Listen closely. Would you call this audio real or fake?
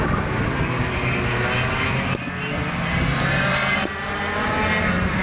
real